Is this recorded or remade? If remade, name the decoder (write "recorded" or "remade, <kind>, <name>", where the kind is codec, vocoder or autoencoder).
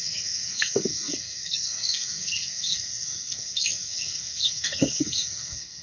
remade, codec, SNAC